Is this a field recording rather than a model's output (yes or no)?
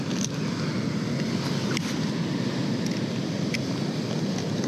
yes